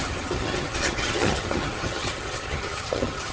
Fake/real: fake